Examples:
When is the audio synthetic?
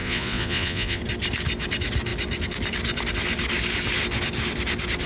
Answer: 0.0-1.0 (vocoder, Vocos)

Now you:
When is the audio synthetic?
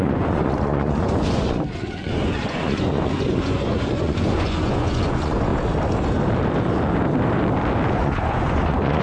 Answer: 0.0-5.5 (vocoder, Vocos); 7.9-9.0